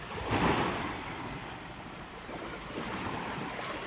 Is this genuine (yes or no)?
no